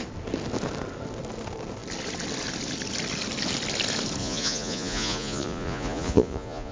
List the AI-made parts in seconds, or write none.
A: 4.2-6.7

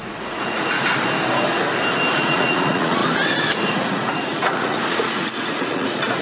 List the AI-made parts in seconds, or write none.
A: 0.0-0.9; 2.1-3.0; 3.7-6.2

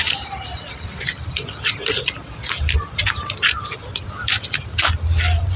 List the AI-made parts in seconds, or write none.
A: none